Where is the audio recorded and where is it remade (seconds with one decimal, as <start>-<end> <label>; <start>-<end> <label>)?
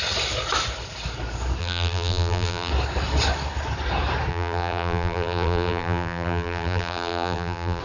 0.0-1.6 recorded; 1.6-2.7 remade; 2.7-4.3 recorded; 4.3-7.8 remade